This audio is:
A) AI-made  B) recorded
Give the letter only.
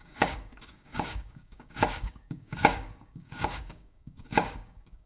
A